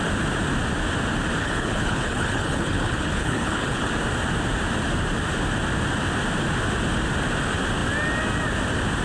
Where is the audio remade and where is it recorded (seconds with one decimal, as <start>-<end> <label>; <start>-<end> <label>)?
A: 0.0-1.4 recorded; 1.4-3.9 remade; 3.9-9.0 recorded